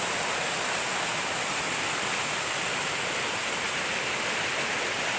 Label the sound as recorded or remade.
recorded